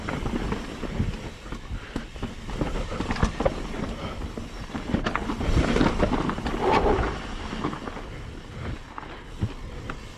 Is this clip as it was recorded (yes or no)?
yes